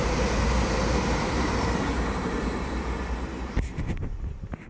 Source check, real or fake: fake